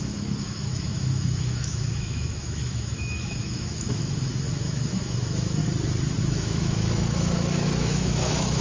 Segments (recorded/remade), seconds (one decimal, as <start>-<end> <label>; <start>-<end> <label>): 0.0-5.6 remade; 5.6-6.2 recorded; 6.2-8.6 remade